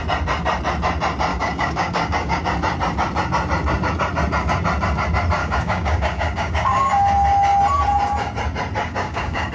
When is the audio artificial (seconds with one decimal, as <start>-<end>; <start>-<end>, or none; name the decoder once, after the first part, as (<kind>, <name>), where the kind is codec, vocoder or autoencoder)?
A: 1.3-2.4 (codec, DAC); 5.4-6.9; 8.8-9.5